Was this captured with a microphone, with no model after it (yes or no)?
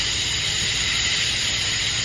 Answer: yes